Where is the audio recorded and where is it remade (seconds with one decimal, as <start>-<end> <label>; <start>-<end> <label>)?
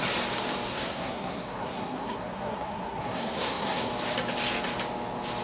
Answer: 0.0-0.7 recorded; 0.7-3.9 remade; 3.9-5.4 recorded